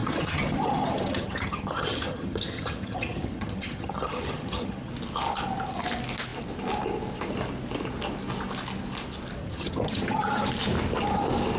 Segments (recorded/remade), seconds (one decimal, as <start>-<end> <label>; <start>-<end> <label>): 0.0-4.9 remade; 4.9-9.4 recorded; 9.4-10.5 remade; 10.5-11.6 recorded